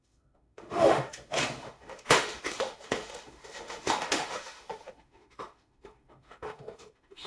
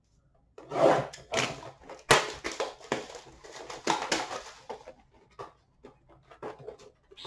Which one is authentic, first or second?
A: second